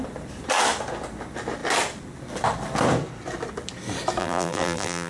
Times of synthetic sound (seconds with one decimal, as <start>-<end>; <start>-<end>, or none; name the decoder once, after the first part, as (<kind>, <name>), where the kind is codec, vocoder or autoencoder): 4.2-5.1 (vocoder, BigVGAN v2)